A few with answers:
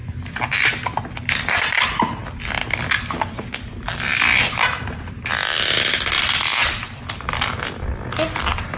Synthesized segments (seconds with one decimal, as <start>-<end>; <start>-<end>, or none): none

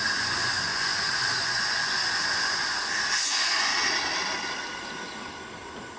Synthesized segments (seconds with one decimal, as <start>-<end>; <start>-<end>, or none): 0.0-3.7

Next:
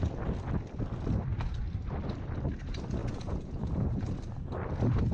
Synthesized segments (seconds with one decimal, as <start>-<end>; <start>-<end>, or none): 3.0-4.1